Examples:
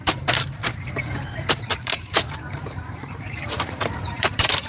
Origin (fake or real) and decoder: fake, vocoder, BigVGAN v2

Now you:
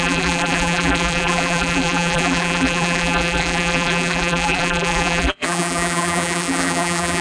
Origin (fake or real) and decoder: fake, vocoder, BigVGAN v2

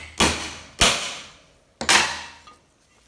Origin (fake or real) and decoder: real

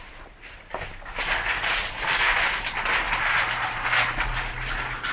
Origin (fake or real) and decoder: real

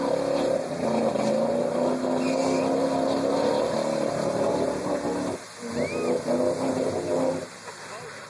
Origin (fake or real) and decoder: real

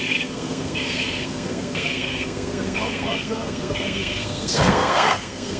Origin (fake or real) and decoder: fake, codec, SNAC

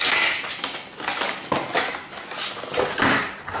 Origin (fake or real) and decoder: real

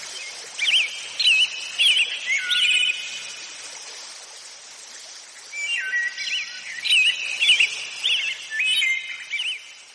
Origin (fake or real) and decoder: real